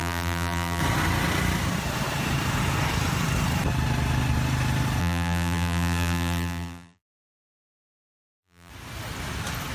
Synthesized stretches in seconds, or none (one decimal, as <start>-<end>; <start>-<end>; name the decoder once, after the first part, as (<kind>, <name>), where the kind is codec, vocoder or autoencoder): 0.0-0.8 (vocoder, BigVGAN v2); 5.0-8.7